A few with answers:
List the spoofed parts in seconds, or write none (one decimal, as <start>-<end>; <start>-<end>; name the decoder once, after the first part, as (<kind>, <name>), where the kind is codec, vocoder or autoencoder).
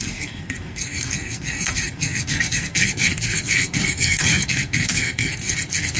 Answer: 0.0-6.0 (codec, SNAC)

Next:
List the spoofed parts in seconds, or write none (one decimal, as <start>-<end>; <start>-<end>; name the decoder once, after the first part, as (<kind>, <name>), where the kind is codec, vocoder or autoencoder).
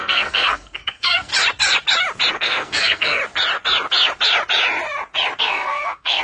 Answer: 0.0-1.3 (codec, SNAC); 2.3-3.2; 5.4-6.2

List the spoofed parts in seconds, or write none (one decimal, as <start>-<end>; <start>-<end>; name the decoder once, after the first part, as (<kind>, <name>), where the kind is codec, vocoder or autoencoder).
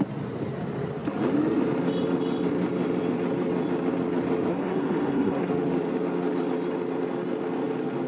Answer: 4.5-5.5 (codec, SNAC)